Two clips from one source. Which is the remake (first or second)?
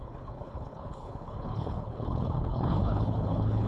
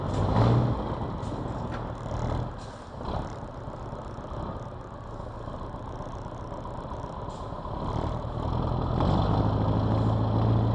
first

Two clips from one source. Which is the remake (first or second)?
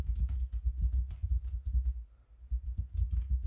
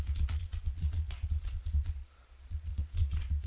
second